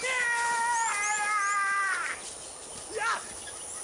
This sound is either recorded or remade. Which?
recorded